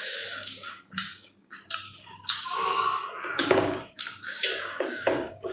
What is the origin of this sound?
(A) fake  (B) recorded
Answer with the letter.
A